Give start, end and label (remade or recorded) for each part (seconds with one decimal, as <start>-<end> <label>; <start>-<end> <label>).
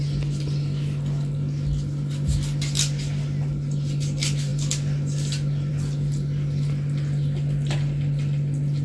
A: 0.0-8.8 recorded